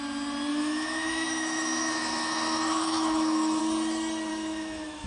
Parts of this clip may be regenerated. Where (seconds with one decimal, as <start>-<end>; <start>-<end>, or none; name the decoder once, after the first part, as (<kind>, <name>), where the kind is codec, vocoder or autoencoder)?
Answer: 0.5-3.6 (autoencoder, DAC-VAE); 4.3-5.1